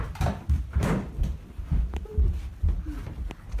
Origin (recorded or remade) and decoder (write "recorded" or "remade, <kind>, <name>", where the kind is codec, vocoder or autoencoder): recorded